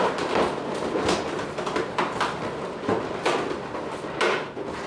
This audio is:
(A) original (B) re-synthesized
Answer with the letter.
A